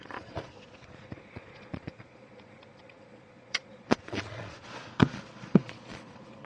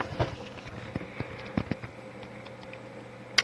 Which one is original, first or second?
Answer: second